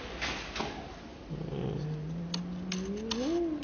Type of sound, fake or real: real